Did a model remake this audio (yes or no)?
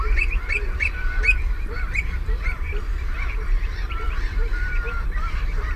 yes